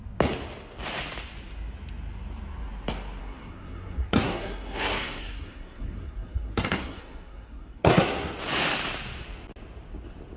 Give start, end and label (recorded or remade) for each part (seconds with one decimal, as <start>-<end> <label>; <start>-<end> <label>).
0.0-3.2 recorded; 3.2-8.3 remade; 8.3-10.4 recorded